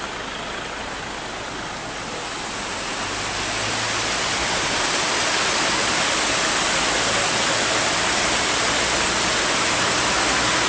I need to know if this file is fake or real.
real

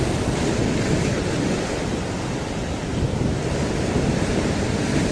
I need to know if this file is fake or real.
real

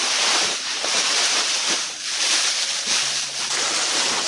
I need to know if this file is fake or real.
fake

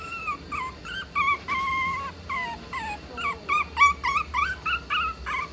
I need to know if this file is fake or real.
real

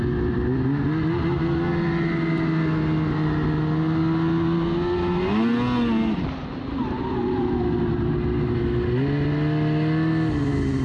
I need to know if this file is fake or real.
real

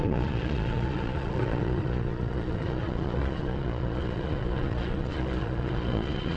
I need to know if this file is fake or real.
fake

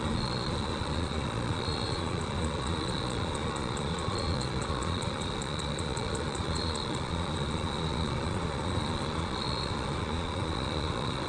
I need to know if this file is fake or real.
fake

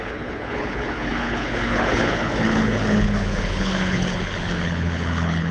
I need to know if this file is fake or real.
fake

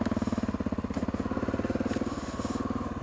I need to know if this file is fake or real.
real